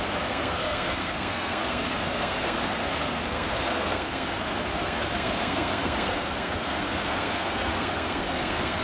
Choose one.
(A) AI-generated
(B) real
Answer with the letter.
A